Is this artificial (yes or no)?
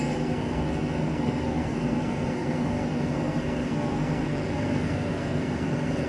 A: yes